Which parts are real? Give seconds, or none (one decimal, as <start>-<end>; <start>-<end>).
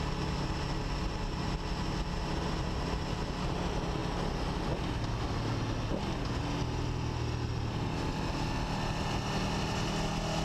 0.0-10.4